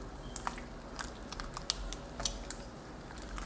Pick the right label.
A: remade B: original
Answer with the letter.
B